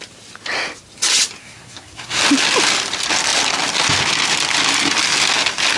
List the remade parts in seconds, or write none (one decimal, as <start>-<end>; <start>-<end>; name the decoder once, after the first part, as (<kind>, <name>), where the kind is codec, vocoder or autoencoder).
1.4-2.2 (codec, SNAC)